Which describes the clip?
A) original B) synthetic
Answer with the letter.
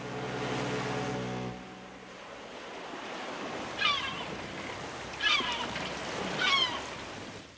A